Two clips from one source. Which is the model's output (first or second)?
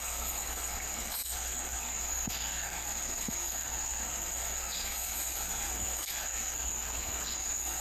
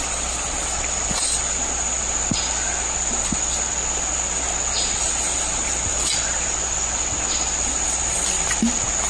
first